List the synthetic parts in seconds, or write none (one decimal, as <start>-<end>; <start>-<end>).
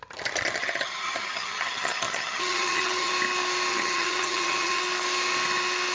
0.6-3.1; 3.7-4.8